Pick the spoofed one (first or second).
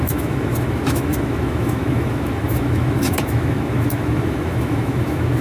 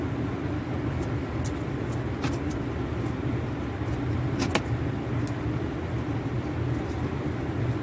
first